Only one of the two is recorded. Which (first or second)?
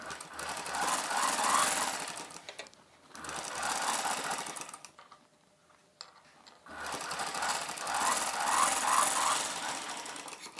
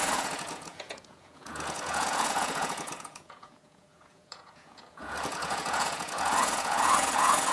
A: first